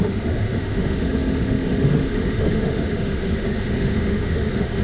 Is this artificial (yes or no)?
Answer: yes